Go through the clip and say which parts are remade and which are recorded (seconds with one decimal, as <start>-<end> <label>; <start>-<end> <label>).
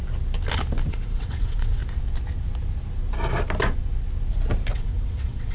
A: 0.0-0.9 recorded; 0.9-1.8 remade; 1.8-4.7 recorded; 4.7-5.5 remade